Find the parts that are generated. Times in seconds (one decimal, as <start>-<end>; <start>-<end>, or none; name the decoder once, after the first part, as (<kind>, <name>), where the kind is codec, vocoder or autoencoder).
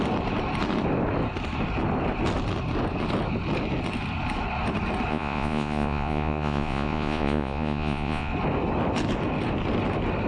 5.1-8.3 (vocoder, Vocos)